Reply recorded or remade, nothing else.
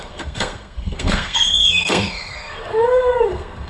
remade